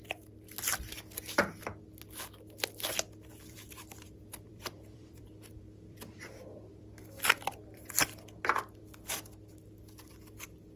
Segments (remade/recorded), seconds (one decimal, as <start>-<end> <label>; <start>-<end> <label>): 0.0-3.3 recorded; 3.3-8.0 remade; 8.0-10.8 recorded